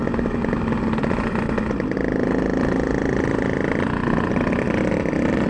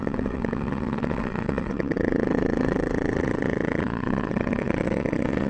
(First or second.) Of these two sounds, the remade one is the second